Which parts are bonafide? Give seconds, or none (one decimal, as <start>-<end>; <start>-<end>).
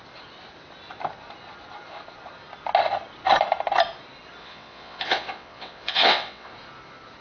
0.0-4.4; 6.5-7.2